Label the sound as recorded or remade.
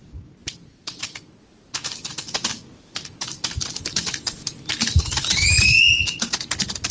recorded